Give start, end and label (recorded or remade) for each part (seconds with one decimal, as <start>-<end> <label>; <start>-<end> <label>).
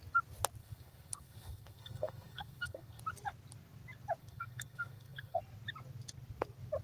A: 0.0-0.6 recorded; 0.6-3.0 remade; 3.0-4.2 recorded; 4.2-5.4 remade; 5.4-6.8 recorded